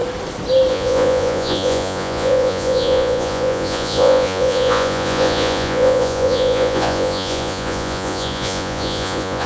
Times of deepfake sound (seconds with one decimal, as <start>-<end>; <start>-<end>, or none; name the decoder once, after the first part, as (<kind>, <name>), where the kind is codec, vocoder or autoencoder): 0.7-9.5 (vocoder, Vocos)